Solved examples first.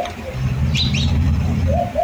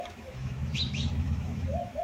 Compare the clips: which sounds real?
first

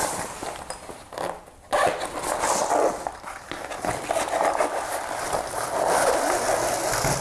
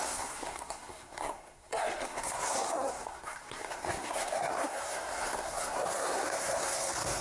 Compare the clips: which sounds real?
first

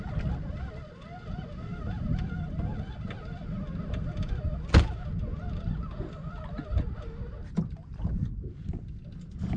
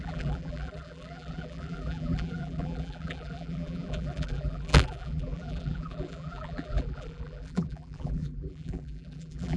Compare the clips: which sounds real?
first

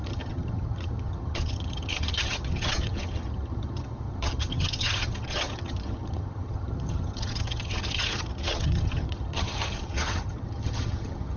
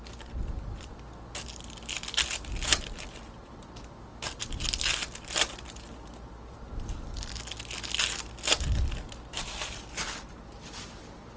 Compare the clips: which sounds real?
second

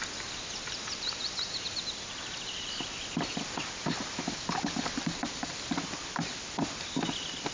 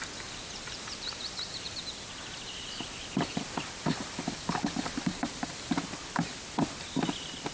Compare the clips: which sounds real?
first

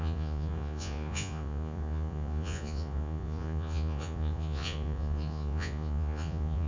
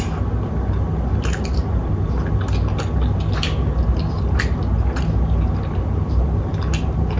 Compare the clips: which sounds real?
second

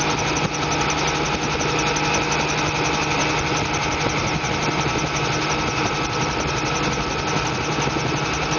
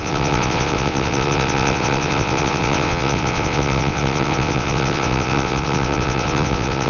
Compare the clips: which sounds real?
first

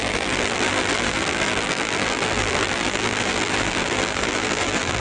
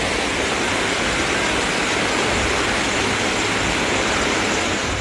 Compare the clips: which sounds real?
second